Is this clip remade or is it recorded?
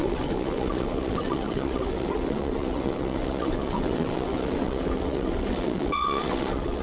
remade